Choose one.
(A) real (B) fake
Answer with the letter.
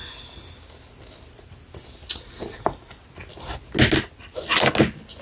A